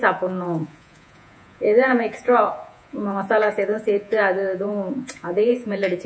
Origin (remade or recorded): remade